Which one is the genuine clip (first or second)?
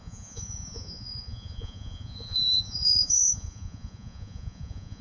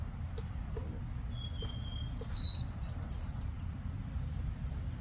second